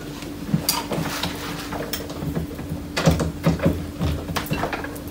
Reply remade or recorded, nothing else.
recorded